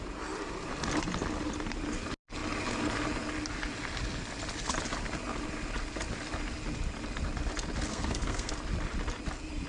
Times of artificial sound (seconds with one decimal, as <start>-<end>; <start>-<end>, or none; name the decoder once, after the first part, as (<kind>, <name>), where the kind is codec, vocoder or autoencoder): 7.9-8.5 (codec, SNAC)